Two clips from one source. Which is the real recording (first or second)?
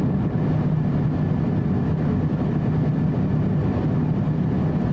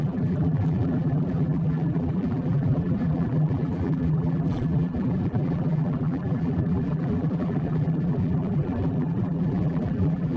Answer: first